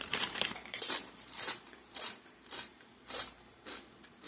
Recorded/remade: remade